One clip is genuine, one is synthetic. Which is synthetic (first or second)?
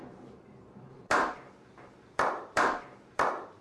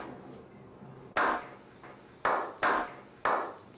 first